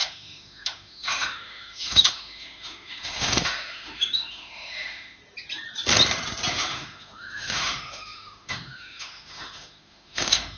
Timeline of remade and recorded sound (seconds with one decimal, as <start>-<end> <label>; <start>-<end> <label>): 0.0-5.2 remade; 5.2-6.5 recorded; 6.5-10.6 remade